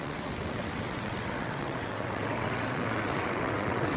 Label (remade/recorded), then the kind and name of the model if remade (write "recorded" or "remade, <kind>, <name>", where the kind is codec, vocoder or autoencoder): remade, vocoder, WaveNeXt